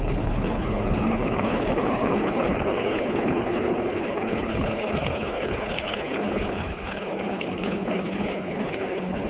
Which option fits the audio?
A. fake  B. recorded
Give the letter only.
A